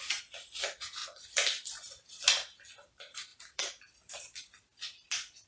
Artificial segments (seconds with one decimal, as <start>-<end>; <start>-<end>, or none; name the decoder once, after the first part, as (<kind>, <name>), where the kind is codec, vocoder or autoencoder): 1.0-2.2 (vocoder, BigVGAN v2); 3.3-5.5